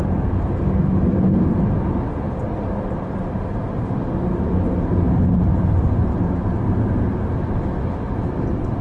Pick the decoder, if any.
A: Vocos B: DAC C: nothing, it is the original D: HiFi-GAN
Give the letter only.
C